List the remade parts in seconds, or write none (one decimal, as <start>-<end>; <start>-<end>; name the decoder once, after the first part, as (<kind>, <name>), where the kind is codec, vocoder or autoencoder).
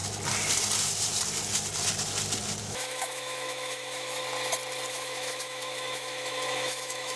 2.6-4.2 (autoencoder, DAC-VAE); 4.9-7.2